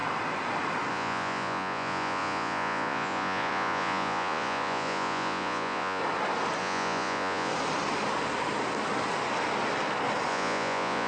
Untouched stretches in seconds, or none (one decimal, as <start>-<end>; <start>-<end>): 0.0-0.9; 6.0-6.6; 7.5-10.3